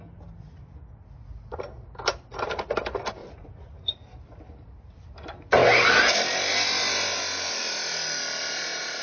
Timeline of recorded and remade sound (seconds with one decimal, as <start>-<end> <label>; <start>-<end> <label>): 0.0-3.2 recorded; 3.2-3.9 remade; 3.9-9.0 recorded